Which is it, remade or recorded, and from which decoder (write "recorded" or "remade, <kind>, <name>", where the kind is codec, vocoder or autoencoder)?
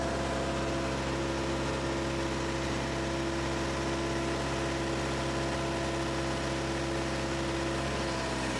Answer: recorded